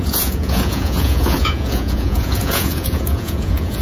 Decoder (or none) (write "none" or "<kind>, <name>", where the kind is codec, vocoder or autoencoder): vocoder, Vocos